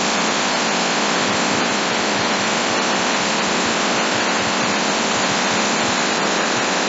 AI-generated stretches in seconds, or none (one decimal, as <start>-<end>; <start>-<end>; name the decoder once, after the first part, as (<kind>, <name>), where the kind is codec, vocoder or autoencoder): none